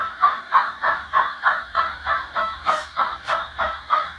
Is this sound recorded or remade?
remade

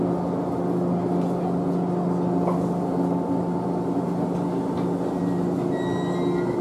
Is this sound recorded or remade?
recorded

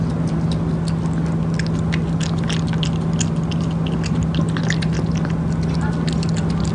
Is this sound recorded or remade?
recorded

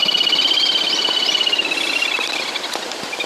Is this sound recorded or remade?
recorded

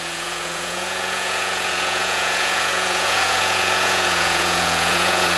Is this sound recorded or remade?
remade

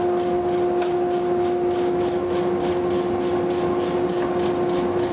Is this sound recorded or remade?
recorded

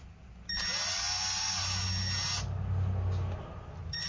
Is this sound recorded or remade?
recorded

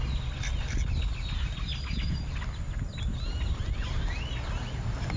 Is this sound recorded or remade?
recorded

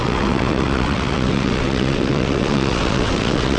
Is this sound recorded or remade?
remade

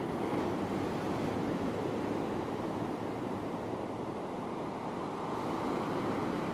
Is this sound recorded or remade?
recorded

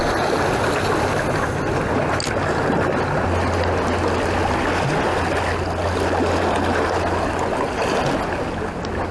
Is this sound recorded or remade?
recorded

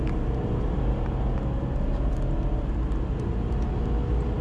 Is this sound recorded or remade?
recorded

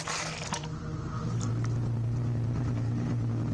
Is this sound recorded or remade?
recorded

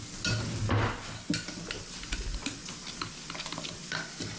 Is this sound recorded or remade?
recorded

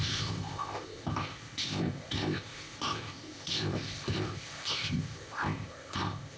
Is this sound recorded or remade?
remade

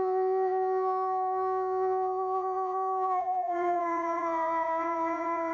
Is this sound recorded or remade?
remade